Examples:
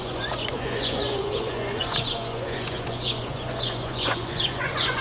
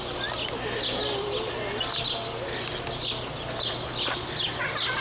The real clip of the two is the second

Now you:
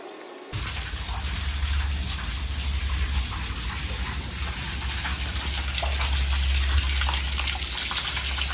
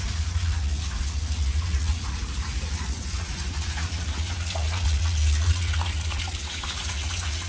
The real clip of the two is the first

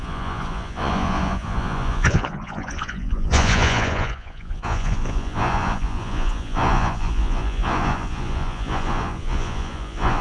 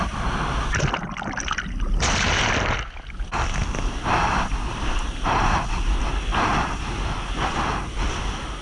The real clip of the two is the second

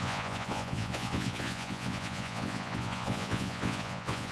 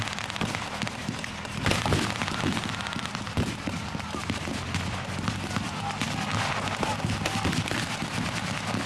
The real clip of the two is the second